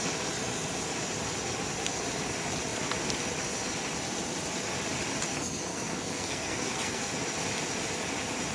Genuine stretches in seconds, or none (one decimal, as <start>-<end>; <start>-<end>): 0.0-5.7; 7.1-8.5